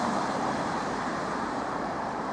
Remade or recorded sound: remade